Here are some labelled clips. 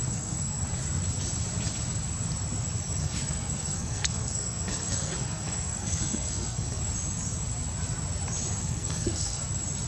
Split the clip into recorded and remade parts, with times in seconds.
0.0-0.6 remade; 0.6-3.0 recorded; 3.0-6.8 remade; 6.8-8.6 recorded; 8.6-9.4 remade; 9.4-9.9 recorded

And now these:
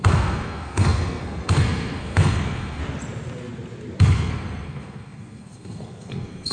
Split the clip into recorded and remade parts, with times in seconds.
0.0-2.8 remade; 2.8-4.0 recorded; 4.0-6.5 remade

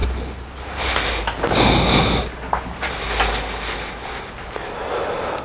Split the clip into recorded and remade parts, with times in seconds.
0.0-5.4 recorded